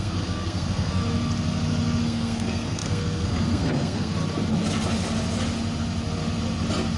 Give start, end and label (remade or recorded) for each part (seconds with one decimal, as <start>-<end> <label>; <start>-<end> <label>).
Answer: 0.0-1.0 remade; 1.0-2.0 recorded; 2.0-4.2 remade; 4.2-7.0 recorded